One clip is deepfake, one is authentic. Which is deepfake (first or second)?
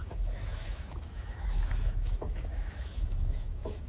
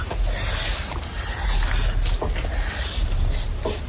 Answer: first